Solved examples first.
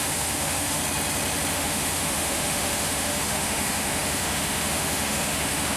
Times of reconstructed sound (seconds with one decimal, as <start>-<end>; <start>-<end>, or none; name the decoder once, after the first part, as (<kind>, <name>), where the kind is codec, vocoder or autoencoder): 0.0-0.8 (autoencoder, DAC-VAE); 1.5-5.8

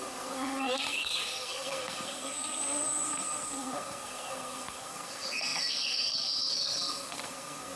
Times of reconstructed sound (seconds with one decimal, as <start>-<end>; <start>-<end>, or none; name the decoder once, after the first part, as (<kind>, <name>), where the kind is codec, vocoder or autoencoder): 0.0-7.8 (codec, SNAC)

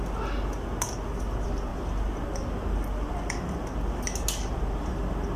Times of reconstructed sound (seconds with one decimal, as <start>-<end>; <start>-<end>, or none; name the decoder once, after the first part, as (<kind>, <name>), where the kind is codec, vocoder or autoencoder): none

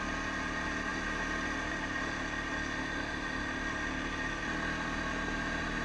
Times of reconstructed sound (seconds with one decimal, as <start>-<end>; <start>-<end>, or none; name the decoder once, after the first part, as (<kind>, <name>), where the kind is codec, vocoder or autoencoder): none

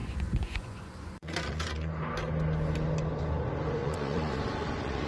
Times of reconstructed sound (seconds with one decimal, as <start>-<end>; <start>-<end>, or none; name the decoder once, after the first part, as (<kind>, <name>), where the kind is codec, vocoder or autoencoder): 0.0-1.9 (vocoder, Vocos); 3.8-5.1